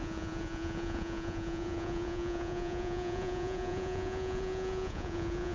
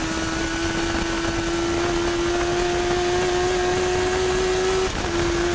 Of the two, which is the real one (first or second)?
second